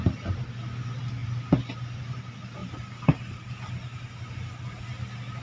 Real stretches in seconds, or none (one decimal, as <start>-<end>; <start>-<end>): 0.0-5.4

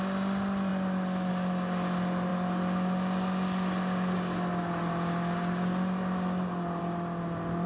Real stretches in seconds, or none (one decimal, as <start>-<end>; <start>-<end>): 0.0-7.7

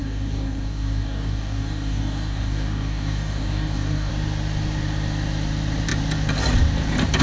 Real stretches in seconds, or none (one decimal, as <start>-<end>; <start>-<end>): 4.1-7.2

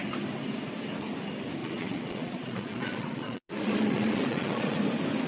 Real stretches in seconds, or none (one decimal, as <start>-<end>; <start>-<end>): 0.0-1.6; 4.8-5.3